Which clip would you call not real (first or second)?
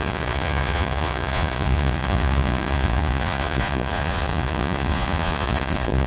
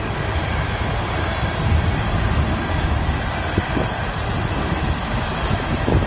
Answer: first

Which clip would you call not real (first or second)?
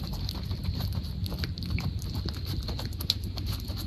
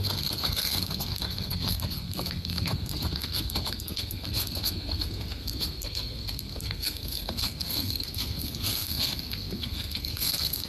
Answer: second